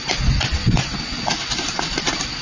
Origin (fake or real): real